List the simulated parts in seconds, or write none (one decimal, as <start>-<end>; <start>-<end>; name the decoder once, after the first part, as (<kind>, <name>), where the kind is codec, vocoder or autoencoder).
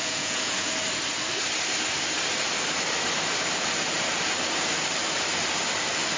0.0-0.7 (vocoder, Vocos)